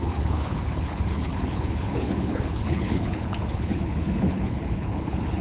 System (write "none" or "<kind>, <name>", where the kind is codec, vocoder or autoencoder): codec, HILCodec